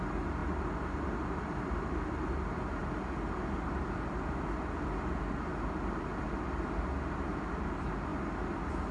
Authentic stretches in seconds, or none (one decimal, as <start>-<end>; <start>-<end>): 0.0-8.9